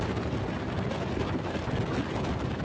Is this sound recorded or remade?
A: recorded